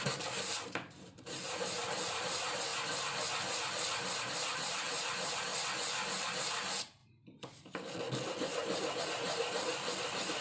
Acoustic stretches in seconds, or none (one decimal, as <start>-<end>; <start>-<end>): 2.7-4.2; 5.5-6.2; 7.0-9.0